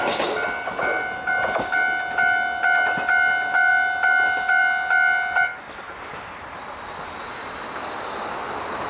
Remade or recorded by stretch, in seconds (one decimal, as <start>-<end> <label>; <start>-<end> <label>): 0.0-8.9 recorded